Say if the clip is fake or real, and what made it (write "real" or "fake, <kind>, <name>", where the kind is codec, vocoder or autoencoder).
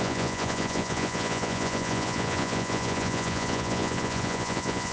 fake, vocoder, Vocos